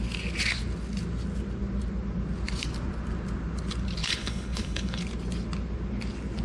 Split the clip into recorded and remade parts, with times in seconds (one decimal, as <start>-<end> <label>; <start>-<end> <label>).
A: 0.0-4.0 recorded; 4.0-5.0 remade; 5.0-6.4 recorded